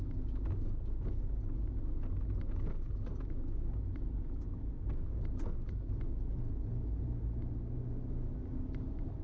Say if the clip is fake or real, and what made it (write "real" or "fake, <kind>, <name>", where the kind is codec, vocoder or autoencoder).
real